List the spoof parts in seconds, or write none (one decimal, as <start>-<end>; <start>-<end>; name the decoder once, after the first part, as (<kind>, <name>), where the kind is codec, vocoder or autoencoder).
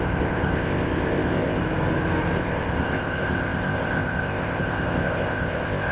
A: 0.0-1.6 (codec, ZipCodec); 2.4-5.9